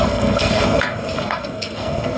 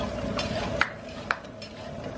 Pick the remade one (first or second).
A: first